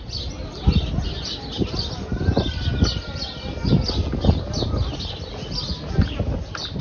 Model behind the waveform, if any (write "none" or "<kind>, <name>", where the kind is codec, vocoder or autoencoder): none